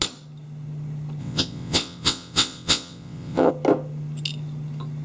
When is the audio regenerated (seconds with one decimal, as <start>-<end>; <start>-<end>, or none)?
1.2-3.5